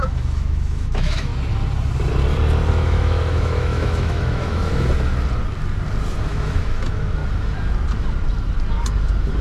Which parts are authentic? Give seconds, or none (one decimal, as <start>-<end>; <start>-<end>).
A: 1.3-2.7; 4.7-6.2; 7.2-9.4